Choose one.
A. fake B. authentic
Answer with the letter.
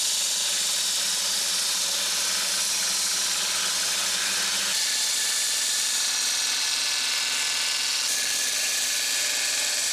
B